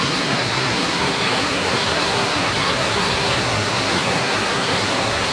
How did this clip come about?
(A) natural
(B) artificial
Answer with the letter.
B